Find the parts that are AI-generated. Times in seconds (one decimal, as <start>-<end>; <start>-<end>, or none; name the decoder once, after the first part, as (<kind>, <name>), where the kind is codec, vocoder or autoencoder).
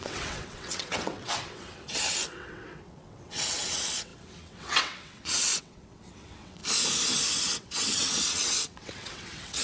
0.0-6.6 (vocoder, WaveNeXt); 7.4-9.6